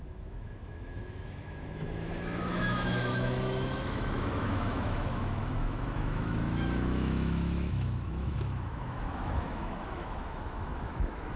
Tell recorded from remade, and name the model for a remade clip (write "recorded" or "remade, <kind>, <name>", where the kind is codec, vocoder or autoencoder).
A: remade, autoencoder, DAC-VAE